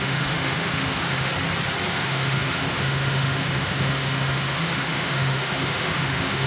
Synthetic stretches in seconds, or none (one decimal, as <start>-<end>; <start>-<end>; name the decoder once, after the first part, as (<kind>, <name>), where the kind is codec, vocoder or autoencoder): 0.0-1.3 (autoencoder, DAC-VAE); 1.9-6.5